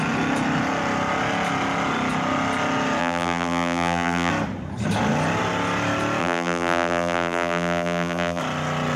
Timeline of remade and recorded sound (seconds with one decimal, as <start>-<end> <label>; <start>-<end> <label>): 0.0-3.0 recorded; 3.0-4.3 remade; 4.3-6.2 recorded; 6.2-8.4 remade; 8.4-9.0 recorded

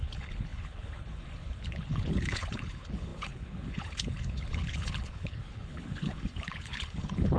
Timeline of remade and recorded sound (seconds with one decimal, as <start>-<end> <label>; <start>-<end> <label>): 0.0-7.4 remade